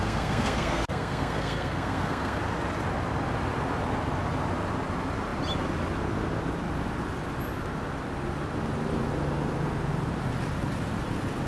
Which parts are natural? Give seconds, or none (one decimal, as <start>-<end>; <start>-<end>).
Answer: 2.4-11.5